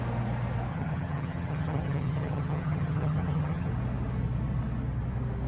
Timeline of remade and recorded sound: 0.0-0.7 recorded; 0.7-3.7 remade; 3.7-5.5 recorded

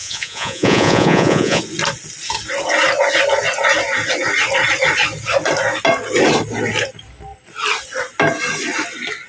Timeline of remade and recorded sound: 0.0-1.6 remade; 1.6-9.3 recorded

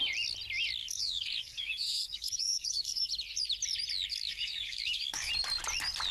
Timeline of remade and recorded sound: 0.0-0.8 recorded; 0.8-3.1 remade; 3.1-4.1 recorded; 4.1-5.3 remade; 5.3-6.1 recorded

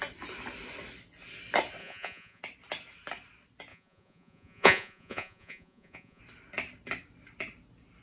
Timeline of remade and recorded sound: 0.0-1.8 recorded; 1.8-2.4 remade; 2.4-3.7 recorded; 3.7-6.2 remade; 6.2-8.0 recorded

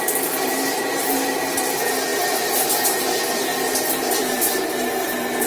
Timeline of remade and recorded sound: 0.0-5.5 remade

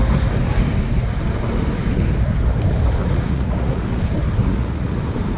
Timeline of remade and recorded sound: 0.0-3.0 recorded; 3.0-4.0 remade; 4.0-4.4 recorded; 4.4-5.0 remade; 5.0-5.4 recorded

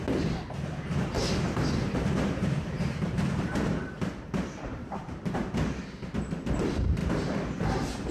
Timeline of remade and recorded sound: 0.0-1.2 recorded; 1.2-6.1 remade; 6.1-7.0 recorded; 7.0-8.1 remade